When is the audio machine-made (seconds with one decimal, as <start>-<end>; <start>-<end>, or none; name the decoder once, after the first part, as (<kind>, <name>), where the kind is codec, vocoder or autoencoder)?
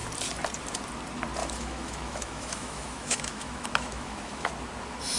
1.4-4.5 (autoencoder, DAC-VAE)